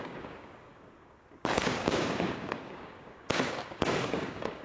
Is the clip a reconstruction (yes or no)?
yes